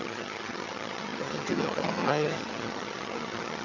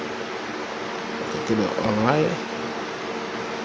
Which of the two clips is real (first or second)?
second